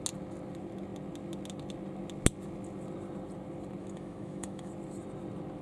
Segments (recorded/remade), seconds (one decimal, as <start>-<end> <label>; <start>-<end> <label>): 0.0-3.8 recorded; 3.8-4.7 remade; 4.7-5.6 recorded